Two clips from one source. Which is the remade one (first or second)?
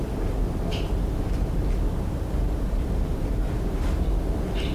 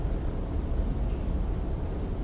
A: second